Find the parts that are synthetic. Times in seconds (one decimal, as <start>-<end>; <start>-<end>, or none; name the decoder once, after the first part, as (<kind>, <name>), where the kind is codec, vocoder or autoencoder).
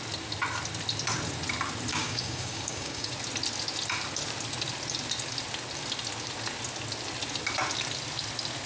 1.9-3.1 (codec, DAC)